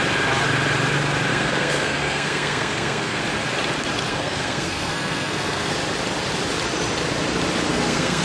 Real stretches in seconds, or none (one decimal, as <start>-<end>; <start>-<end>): 0.0-1.3; 3.2-4.1; 5.7-7.7